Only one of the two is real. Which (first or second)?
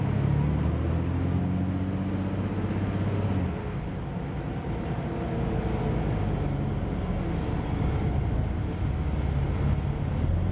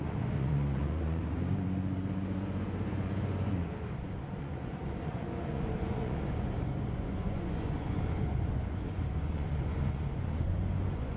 first